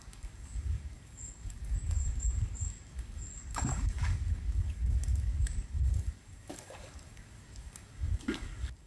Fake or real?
fake